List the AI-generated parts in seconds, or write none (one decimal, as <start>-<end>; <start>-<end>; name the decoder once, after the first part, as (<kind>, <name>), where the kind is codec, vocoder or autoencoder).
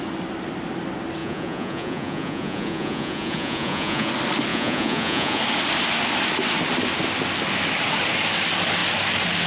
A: 1.2-4.1 (vocoder, Vocos); 4.5-5.4